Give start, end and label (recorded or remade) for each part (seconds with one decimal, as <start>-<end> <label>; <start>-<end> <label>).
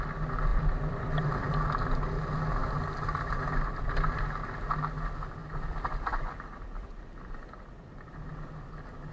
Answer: 0.0-0.5 recorded; 0.5-1.5 remade; 1.5-5.4 recorded; 5.4-8.1 remade; 8.1-9.1 recorded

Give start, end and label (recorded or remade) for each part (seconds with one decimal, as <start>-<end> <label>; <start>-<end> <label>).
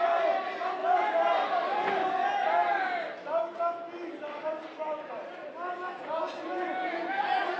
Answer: 0.0-0.8 recorded; 0.8-1.8 remade; 1.8-7.6 recorded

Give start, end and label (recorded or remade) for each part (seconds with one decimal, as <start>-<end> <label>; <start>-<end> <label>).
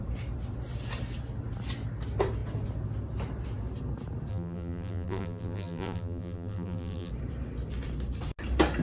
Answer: 0.0-4.3 recorded; 4.3-7.1 remade; 7.1-8.8 recorded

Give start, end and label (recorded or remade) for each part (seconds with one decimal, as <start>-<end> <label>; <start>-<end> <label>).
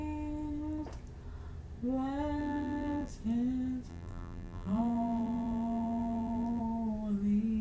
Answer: 0.0-2.4 recorded; 2.4-3.1 remade; 3.1-3.9 recorded; 3.9-6.6 remade; 6.6-7.6 recorded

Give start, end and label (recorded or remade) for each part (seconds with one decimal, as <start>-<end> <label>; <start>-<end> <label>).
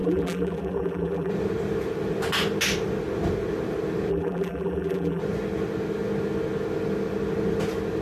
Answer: 0.0-1.3 remade; 1.3-4.1 recorded; 4.1-5.2 remade; 5.2-8.0 recorded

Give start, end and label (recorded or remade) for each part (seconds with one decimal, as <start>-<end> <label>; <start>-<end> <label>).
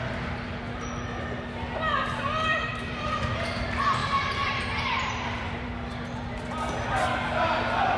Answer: 0.0-2.7 recorded; 2.7-3.2 remade; 3.2-4.0 recorded; 4.0-5.7 remade; 5.7-8.0 recorded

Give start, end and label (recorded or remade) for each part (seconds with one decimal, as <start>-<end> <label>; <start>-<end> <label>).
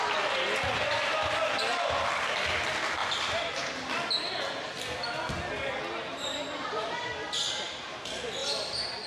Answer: 0.0-3.0 recorded; 3.0-3.7 remade; 3.7-6.1 recorded; 6.1-6.9 remade; 6.9-9.1 recorded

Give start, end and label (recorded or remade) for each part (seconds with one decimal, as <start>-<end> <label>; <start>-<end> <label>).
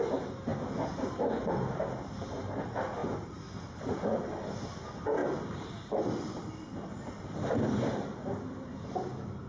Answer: 0.0-5.2 recorded; 5.2-7.1 remade; 7.1-9.5 recorded